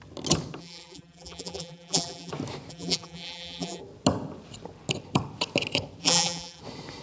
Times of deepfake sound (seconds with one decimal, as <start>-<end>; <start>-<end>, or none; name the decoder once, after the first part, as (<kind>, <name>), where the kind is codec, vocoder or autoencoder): 0.6-2.3 (vocoder, BigVGAN v2); 2.7-3.8; 6.0-6.6